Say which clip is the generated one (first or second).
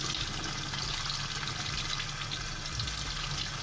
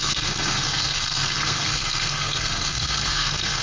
second